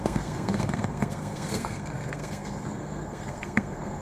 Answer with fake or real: fake